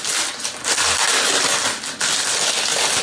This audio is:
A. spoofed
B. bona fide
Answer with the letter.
B